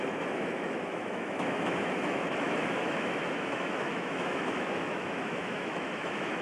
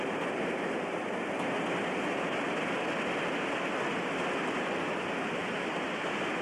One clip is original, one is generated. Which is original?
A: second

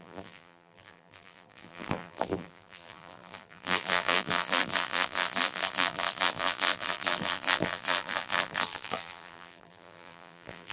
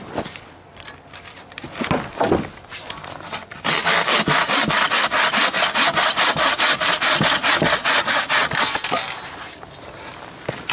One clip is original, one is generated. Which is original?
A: second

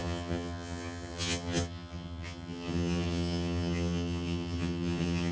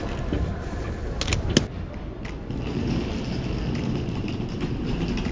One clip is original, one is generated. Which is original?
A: second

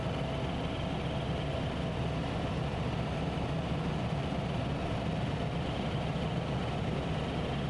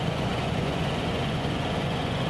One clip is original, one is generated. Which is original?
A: first